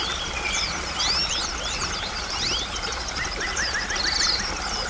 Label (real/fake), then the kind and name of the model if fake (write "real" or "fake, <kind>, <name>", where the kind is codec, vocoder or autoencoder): real